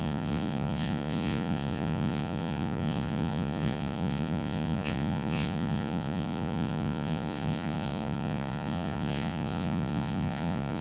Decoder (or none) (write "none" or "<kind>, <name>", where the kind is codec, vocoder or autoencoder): vocoder, Vocos